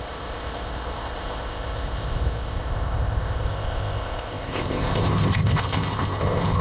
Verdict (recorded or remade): remade